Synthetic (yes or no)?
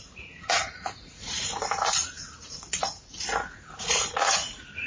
yes